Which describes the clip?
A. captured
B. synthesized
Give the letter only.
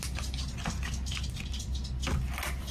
A